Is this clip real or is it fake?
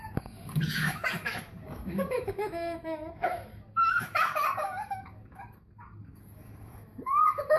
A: fake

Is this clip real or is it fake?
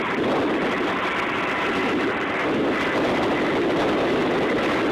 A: real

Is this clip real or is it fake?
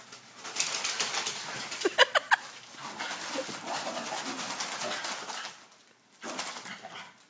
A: real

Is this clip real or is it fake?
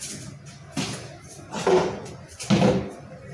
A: real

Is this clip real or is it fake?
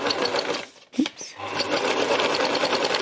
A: real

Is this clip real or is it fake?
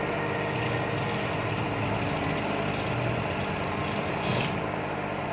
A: real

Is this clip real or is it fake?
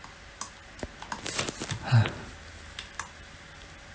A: real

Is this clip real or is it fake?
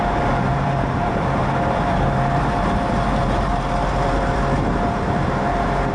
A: fake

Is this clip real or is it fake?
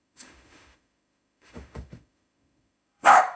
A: fake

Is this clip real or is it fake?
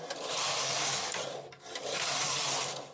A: real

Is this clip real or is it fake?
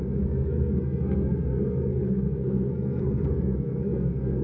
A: fake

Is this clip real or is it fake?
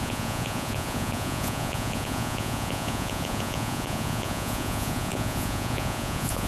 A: fake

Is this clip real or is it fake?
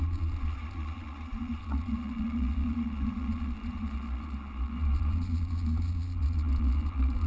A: fake